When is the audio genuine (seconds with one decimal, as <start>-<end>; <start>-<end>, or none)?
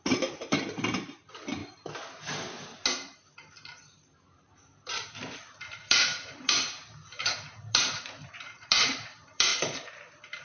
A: 1.6-3.5